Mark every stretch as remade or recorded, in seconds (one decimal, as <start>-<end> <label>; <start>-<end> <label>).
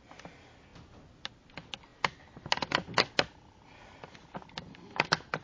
0.0-5.4 recorded